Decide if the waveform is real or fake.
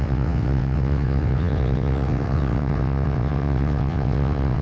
fake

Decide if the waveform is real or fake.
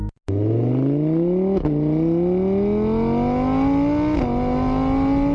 real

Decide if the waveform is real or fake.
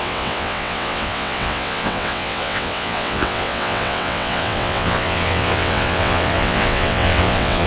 fake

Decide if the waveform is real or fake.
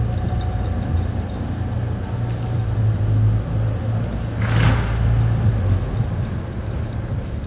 real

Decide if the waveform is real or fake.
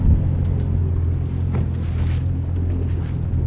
real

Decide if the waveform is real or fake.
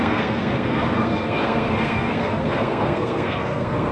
fake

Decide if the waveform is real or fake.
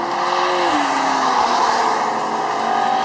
real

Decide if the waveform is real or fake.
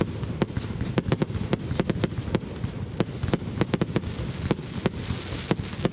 real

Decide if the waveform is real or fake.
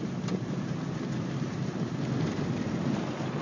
real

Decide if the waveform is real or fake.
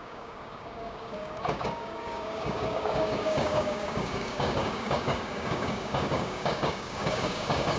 fake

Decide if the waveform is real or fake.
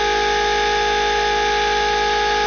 real